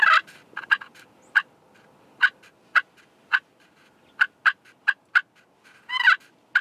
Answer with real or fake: real